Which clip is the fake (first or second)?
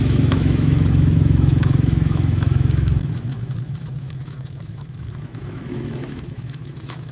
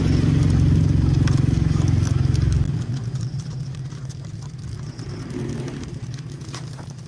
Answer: first